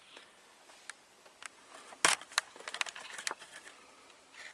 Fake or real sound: real